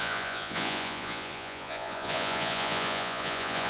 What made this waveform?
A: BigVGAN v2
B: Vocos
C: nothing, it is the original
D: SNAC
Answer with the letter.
B